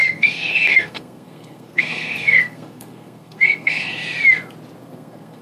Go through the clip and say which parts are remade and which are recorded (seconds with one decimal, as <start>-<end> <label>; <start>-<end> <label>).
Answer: 0.0-3.9 remade; 3.9-4.8 recorded; 4.8-5.4 remade